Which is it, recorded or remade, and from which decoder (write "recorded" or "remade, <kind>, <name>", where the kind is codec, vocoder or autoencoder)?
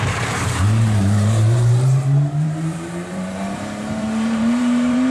remade, vocoder, BigVGAN v2